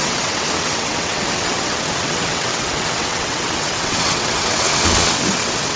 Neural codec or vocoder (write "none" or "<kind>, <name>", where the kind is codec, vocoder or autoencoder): vocoder, WaveNeXt